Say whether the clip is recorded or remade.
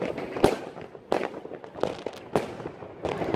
recorded